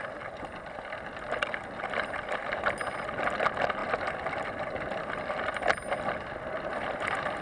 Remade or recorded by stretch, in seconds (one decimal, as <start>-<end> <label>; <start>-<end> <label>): 0.0-7.4 recorded